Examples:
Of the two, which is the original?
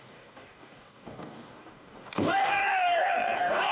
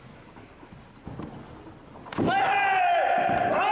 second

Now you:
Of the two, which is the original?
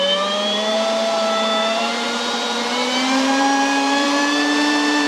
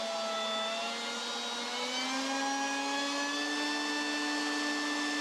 second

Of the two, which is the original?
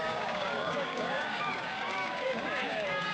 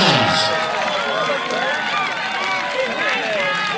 second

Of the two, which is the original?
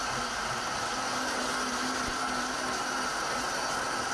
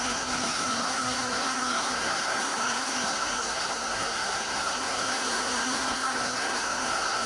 first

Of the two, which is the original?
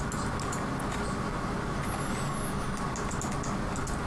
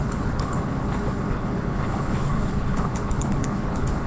first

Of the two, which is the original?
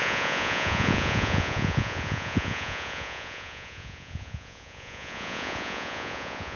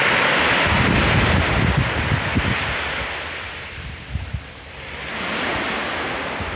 second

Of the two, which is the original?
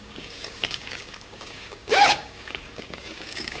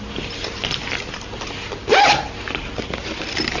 second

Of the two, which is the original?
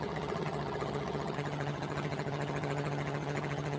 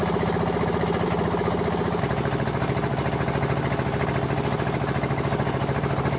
second